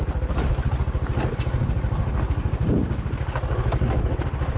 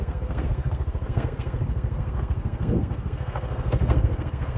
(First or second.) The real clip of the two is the first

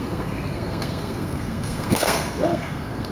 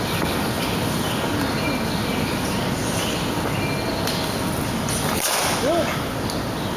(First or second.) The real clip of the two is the second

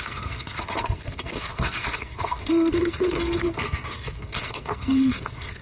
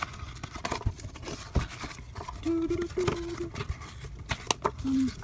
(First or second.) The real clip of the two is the second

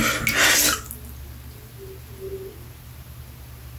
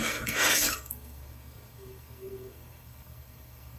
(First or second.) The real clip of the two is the first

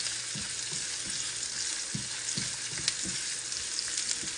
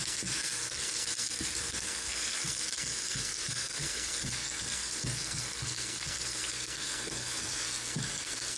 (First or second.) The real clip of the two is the first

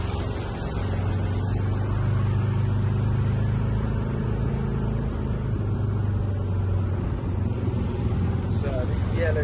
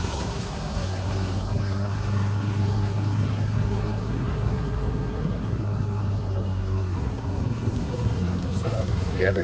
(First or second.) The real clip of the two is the first